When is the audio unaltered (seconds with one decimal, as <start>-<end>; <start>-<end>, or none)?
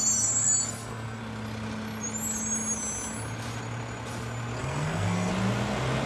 0.0-0.7; 1.2-4.6; 5.3-6.1